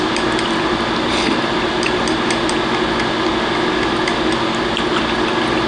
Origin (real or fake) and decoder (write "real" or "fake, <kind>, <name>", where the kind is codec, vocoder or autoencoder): real